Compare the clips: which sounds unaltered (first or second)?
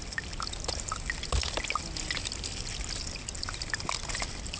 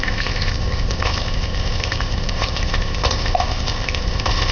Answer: first